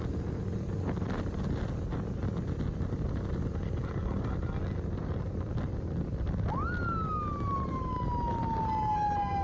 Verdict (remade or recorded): recorded